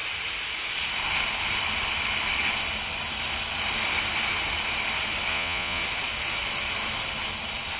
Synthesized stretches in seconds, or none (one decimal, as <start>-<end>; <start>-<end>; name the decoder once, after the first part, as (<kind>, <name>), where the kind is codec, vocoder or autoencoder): 5.3-5.8 (vocoder, Vocos)